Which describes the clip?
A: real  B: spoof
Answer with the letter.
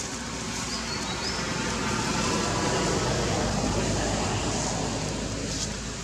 A